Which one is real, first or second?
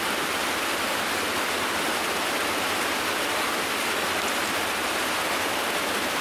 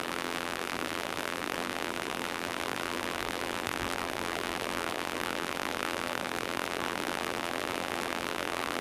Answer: first